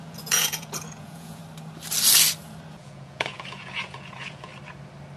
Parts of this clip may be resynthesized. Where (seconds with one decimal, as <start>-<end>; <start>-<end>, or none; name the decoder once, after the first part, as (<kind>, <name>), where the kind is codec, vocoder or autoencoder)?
0.0-1.4 (vocoder, Vocos); 2.7-4.5